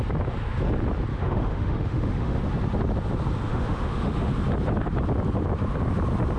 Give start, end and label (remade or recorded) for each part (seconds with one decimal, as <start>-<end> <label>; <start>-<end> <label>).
0.0-1.1 recorded; 1.1-2.4 remade; 2.4-3.5 recorded; 3.5-4.3 remade; 4.3-6.4 recorded

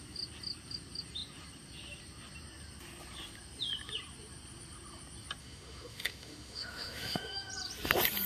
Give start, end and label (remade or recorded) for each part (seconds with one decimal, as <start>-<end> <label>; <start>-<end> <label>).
0.0-5.4 recorded; 5.4-7.5 remade; 7.5-8.3 recorded

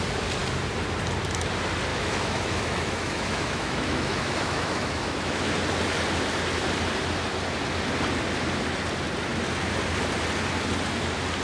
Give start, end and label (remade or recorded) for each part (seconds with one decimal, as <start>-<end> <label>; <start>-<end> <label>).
0.0-1.9 recorded; 1.9-5.5 remade; 5.5-11.4 recorded

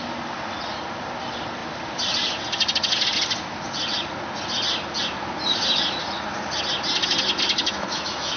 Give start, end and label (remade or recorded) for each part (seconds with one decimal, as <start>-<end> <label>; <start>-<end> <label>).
0.0-7.6 recorded; 7.6-8.4 remade